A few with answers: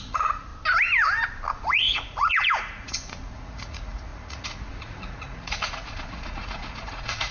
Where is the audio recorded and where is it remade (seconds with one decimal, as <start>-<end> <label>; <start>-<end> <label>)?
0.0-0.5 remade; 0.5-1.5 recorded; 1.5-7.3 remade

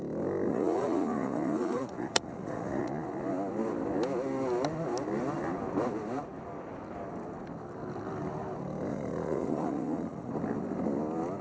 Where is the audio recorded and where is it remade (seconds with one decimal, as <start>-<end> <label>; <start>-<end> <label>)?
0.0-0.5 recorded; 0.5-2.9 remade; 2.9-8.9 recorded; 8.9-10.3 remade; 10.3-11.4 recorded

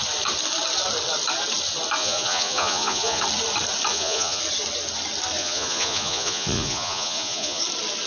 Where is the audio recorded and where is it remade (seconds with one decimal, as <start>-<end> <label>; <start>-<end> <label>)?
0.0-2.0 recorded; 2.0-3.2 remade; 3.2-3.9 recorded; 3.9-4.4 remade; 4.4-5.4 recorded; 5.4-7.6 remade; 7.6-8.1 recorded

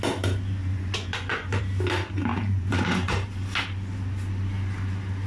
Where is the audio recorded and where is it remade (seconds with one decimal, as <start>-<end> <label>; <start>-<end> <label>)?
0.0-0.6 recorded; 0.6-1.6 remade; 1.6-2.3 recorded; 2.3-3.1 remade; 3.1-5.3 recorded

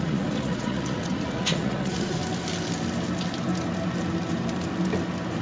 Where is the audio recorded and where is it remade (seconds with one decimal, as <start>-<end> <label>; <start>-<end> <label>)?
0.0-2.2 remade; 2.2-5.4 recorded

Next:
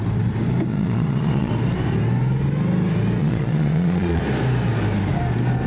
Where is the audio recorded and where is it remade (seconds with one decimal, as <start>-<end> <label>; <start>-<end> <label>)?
0.0-0.7 recorded; 0.7-1.5 remade; 1.5-3.2 recorded; 3.2-4.2 remade; 4.2-5.7 recorded